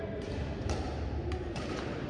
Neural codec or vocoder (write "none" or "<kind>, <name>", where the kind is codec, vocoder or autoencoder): none